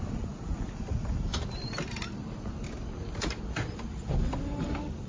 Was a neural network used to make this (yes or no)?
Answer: no